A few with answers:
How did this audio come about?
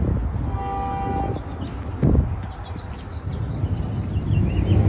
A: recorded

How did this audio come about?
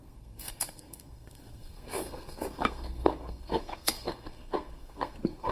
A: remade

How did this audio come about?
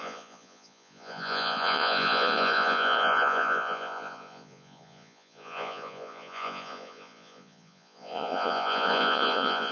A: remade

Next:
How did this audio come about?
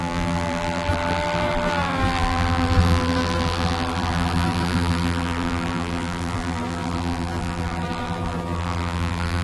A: remade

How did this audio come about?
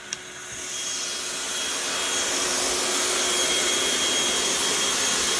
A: recorded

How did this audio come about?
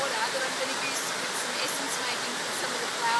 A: recorded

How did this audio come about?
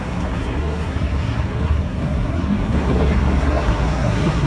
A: remade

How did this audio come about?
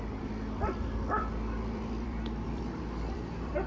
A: remade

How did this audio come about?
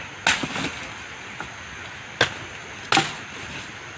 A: recorded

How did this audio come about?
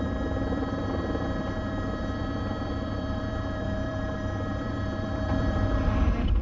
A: remade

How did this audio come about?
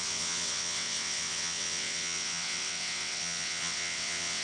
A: remade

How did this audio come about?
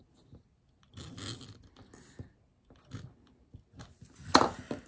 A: recorded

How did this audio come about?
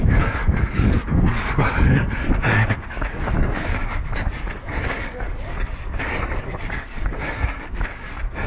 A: remade